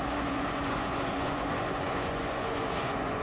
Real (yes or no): no